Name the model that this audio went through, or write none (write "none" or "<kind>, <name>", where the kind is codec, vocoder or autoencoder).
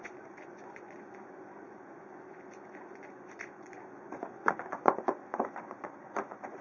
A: vocoder, Vocos